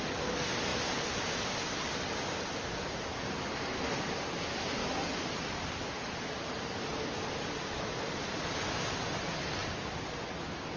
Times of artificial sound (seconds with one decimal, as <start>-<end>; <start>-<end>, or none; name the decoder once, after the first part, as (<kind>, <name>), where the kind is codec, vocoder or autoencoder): none